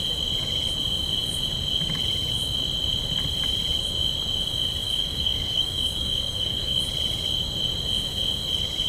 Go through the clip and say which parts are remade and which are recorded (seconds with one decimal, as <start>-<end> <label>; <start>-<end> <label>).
0.0-4.8 recorded; 4.8-6.8 remade; 6.8-8.9 recorded

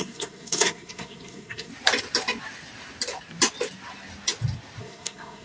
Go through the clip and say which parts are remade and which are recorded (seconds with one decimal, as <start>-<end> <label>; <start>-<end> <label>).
0.0-1.7 remade; 1.7-4.8 recorded; 4.8-5.4 remade

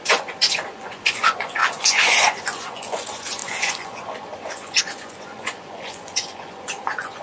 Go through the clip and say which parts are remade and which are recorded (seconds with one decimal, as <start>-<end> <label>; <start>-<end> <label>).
0.0-7.2 remade

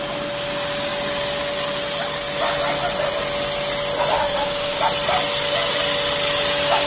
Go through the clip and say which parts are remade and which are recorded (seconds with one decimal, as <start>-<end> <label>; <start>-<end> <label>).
0.0-4.1 recorded; 4.1-4.8 remade; 4.8-6.9 recorded

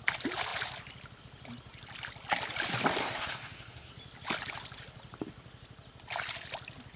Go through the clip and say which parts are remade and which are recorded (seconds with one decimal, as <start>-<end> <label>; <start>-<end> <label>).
0.0-3.0 recorded; 3.0-3.9 remade; 3.9-7.0 recorded